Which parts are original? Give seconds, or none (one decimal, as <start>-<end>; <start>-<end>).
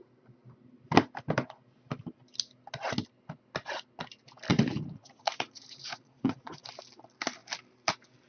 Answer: 0.0-4.5; 6.7-8.3